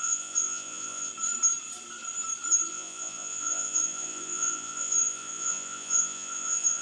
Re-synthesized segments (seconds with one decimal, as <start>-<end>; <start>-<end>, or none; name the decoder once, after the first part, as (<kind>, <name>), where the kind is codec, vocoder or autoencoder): 0.0-1.1 (vocoder, Vocos); 2.7-6.8